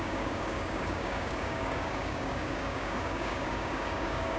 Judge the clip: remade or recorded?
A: remade